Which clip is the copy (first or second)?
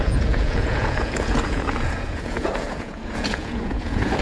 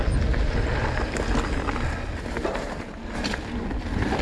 first